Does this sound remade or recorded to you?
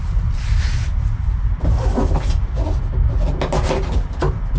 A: recorded